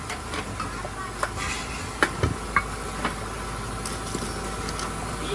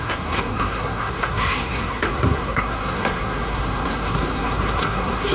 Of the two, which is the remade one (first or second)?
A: second